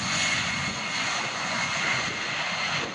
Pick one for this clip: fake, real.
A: fake